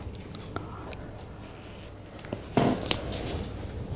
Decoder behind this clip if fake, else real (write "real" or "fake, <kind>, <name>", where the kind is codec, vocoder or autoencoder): real